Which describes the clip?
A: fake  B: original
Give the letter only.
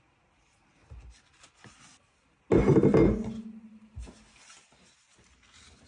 B